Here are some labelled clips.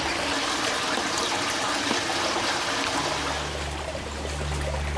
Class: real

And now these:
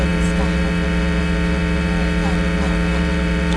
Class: fake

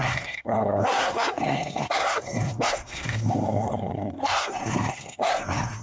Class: fake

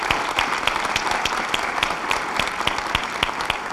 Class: real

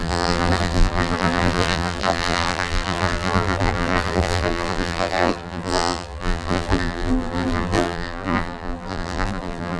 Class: fake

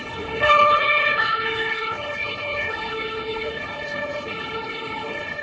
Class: fake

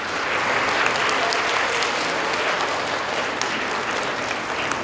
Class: real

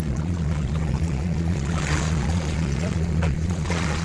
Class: fake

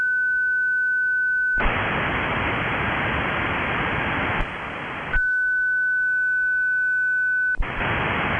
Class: real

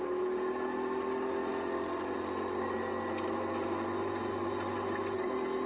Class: real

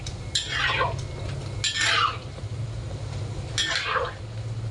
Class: real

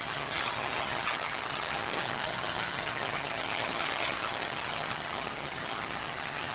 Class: fake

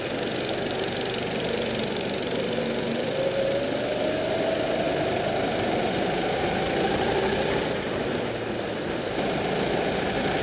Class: real